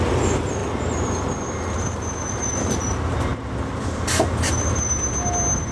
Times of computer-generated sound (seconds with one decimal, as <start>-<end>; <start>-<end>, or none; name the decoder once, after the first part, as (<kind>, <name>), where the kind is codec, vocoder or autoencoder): none